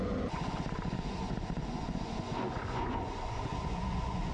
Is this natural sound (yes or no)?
no